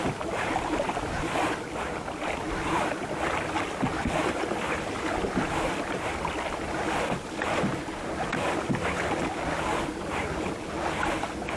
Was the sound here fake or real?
real